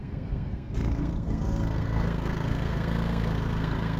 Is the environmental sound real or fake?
fake